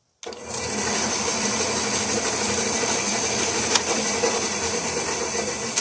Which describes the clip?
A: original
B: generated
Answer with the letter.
A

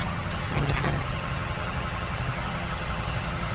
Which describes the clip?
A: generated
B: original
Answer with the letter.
A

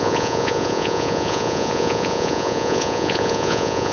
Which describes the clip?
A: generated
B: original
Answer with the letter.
A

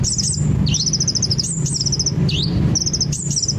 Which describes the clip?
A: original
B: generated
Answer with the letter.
A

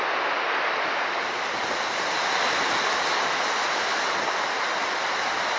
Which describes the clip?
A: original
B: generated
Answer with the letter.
A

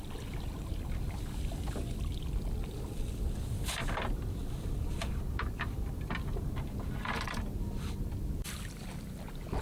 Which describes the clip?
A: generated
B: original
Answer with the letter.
B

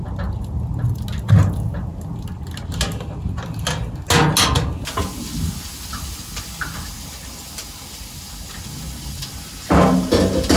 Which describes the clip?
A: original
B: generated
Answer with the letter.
A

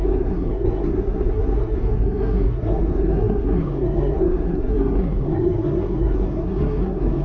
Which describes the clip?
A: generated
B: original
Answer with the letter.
A